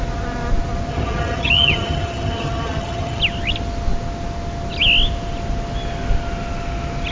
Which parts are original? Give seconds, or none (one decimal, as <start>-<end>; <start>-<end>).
0.0-0.9; 3.2-7.1